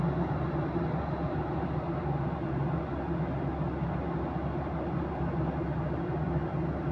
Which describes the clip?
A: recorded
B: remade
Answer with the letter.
A